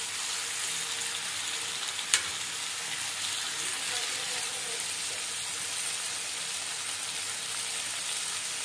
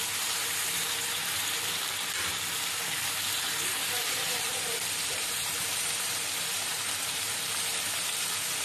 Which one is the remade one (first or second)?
second